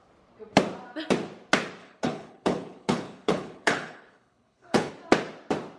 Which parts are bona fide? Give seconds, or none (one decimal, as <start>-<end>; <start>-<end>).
0.0-1.8; 4.9-5.8